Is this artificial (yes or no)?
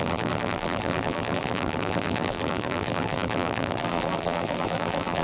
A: yes